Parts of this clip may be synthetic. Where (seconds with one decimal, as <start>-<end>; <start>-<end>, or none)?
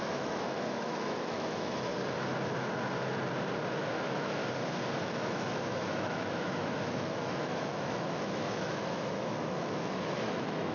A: 0.0-1.9; 3.7-4.4; 5.0-10.7